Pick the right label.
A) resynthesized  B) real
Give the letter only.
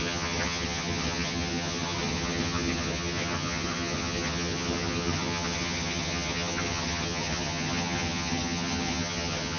A